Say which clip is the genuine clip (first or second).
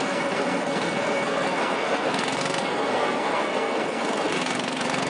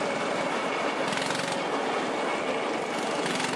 second